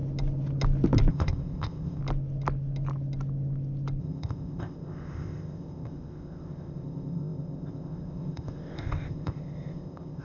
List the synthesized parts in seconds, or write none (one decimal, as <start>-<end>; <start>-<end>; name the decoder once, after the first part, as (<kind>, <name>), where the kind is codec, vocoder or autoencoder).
1.1-2.0 (codec, ZipCodec); 4.0-10.2